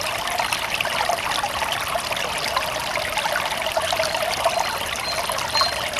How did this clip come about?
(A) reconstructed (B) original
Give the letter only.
B